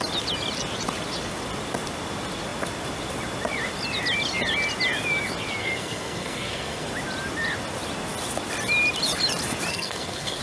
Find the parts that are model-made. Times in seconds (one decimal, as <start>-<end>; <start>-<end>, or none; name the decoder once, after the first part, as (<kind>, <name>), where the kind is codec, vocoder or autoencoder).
5.6-6.9 (codec, SNAC); 9.7-10.4